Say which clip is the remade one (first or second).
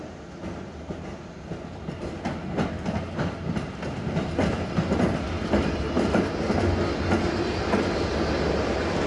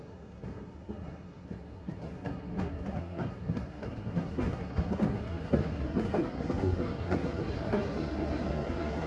second